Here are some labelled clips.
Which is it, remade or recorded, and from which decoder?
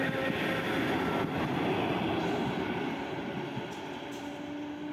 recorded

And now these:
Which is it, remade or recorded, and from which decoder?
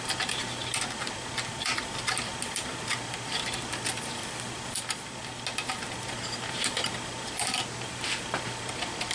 recorded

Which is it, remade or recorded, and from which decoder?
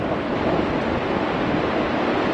recorded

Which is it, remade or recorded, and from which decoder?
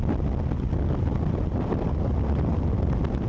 recorded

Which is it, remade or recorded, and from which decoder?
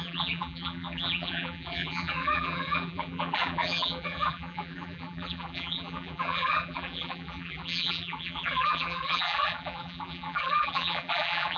remade, vocoder, BigVGAN v2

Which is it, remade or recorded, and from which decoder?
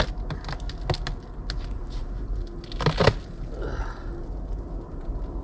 recorded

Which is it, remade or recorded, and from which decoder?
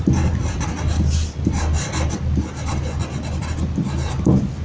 recorded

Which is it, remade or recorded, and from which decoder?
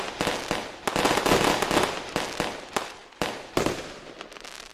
recorded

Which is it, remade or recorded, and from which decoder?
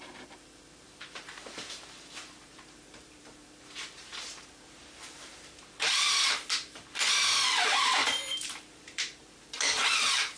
remade, vocoder, BigVGAN v2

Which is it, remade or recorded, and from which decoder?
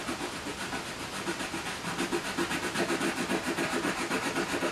remade, vocoder, BigVGAN v2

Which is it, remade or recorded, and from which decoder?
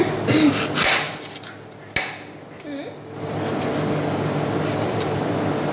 recorded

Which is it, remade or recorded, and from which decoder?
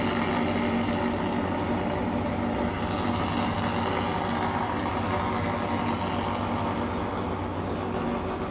recorded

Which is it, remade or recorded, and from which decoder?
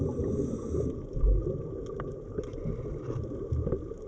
recorded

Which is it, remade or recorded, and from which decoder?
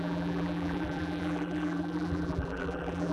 remade, vocoder, BigVGAN v2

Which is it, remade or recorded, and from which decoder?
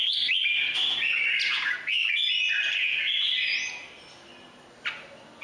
recorded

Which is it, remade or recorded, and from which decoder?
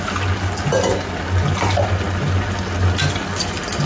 recorded